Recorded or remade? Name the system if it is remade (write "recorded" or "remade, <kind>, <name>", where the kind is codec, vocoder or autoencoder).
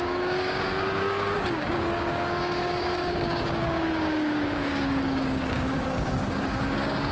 remade, codec, DAC